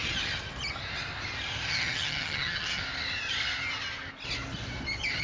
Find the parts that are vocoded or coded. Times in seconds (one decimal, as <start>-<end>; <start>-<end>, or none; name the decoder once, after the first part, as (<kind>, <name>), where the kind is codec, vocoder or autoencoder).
1.7-2.8 (vocoder, HiFi-GAN)

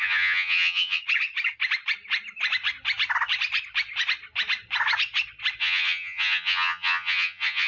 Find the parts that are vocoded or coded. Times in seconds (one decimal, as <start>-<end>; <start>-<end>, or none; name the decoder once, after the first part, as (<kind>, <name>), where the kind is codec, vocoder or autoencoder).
0.0-1.0 (vocoder, HiFi-GAN); 5.6-7.7

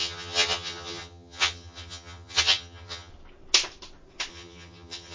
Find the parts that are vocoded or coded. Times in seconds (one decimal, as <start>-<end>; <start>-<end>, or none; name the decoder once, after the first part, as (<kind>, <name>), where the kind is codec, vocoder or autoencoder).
0.0-3.1 (vocoder, HiFi-GAN); 4.3-5.1

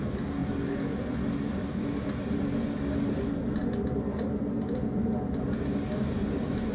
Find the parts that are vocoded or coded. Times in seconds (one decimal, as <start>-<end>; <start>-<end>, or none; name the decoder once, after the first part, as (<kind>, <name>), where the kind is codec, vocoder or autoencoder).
none

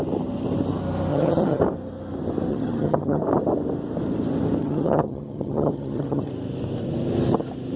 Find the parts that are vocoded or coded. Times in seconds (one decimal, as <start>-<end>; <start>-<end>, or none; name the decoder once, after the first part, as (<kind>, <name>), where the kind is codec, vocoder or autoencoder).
1.1-1.6 (vocoder, HiFi-GAN); 2.5-3.2; 4.6-6.3

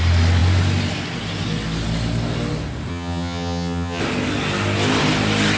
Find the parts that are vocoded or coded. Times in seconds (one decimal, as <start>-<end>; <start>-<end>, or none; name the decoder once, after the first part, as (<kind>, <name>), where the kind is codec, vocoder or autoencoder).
2.9-4.0 (vocoder, HiFi-GAN)

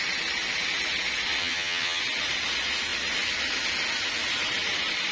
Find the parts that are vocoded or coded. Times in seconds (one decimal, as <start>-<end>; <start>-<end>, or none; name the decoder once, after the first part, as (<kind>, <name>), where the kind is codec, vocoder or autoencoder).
1.4-2.0 (vocoder, HiFi-GAN)